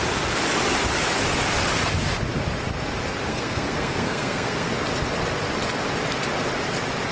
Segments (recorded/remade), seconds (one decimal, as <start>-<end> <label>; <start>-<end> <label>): 0.0-3.3 recorded; 3.3-4.7 remade; 4.7-7.1 recorded